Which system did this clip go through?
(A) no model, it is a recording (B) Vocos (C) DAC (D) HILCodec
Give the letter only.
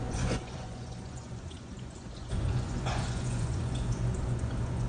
B